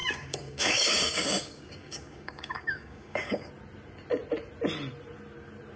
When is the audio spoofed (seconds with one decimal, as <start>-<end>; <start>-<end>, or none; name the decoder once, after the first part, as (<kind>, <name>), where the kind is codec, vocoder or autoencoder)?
0.0-3.5 (codec, DAC)